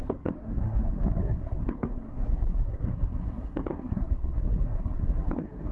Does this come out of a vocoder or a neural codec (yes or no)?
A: yes